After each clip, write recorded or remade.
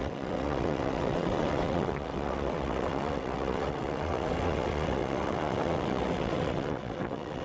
remade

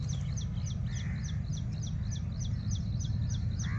recorded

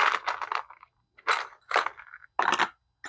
recorded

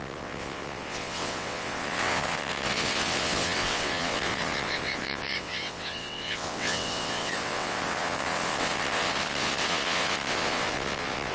remade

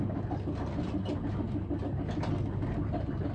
recorded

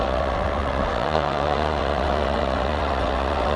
remade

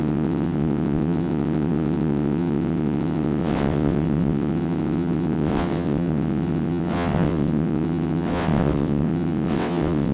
remade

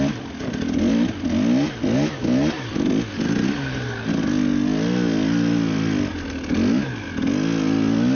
recorded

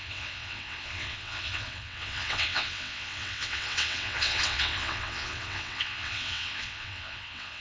remade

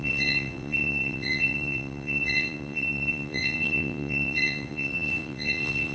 remade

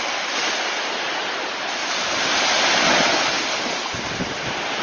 recorded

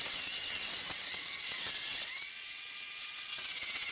remade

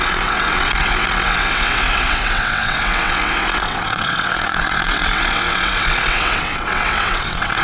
remade